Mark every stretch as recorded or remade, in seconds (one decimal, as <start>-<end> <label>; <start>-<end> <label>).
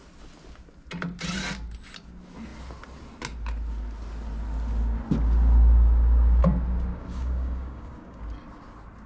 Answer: 0.0-6.9 recorded; 6.9-8.2 remade; 8.2-9.1 recorded